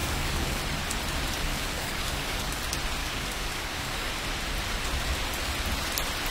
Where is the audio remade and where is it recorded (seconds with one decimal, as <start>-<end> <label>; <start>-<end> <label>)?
0.0-0.6 remade; 0.6-1.5 recorded; 1.5-2.6 remade; 2.6-3.0 recorded; 3.0-4.1 remade; 4.1-6.3 recorded